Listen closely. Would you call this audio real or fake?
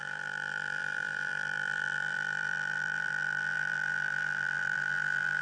fake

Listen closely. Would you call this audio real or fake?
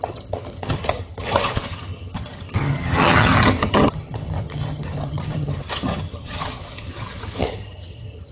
fake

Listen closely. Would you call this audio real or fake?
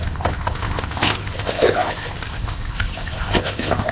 fake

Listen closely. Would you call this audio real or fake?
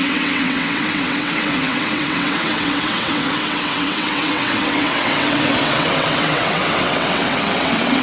fake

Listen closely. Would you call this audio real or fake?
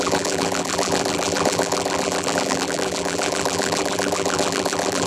fake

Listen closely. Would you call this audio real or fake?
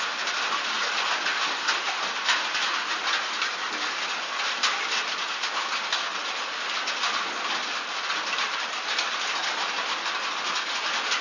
real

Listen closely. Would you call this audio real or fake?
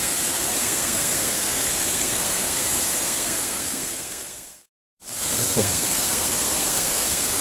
fake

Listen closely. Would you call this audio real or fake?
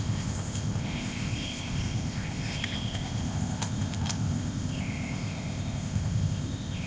fake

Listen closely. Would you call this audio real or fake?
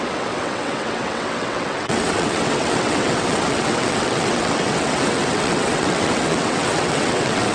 fake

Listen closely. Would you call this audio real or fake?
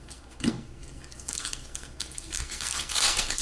fake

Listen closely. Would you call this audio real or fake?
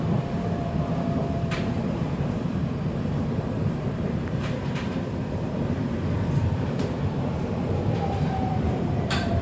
fake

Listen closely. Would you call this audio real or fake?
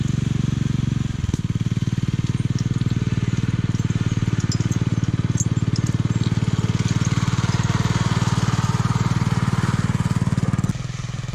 real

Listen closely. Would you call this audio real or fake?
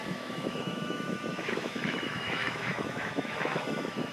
fake